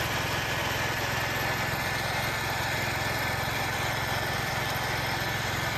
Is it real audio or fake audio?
fake